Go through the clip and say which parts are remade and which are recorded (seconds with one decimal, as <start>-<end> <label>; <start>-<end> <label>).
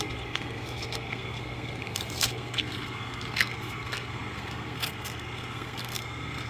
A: 0.0-6.5 remade